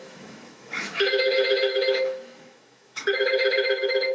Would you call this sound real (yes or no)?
no